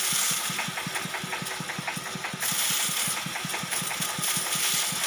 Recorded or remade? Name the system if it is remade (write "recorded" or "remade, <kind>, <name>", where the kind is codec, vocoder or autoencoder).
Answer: recorded